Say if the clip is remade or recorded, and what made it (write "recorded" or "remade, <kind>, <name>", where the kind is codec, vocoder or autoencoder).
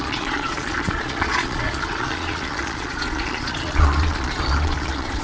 remade, vocoder, Vocos